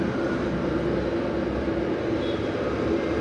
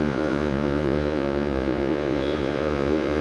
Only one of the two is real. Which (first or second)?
first